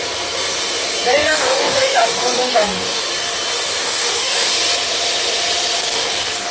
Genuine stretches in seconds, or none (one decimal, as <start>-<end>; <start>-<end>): 0.0-1.1; 3.0-3.8; 4.5-5.8